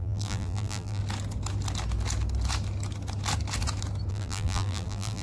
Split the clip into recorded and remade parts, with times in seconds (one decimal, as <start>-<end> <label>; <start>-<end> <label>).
0.0-1.0 remade; 1.0-4.1 recorded; 4.1-5.2 remade